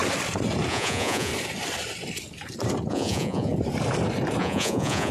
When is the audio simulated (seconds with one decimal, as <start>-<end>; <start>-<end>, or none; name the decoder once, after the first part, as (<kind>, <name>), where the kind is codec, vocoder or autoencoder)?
0.7-1.3 (vocoder, Vocos); 2.9-3.5; 4.4-5.1